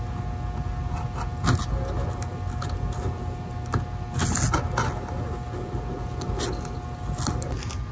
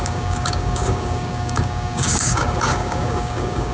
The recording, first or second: first